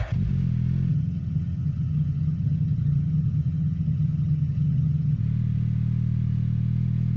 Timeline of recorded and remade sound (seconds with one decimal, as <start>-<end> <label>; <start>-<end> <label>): 0.0-0.9 recorded; 0.9-5.2 remade; 5.2-7.2 recorded